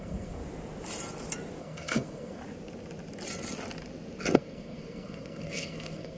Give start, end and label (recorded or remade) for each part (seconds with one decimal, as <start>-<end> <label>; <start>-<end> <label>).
0.0-0.4 remade; 0.4-1.6 recorded; 1.6-2.4 remade; 2.4-4.2 recorded; 4.2-6.2 remade